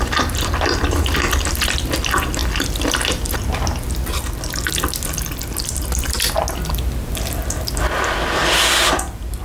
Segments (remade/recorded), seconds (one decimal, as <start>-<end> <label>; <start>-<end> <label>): 0.0-9.4 recorded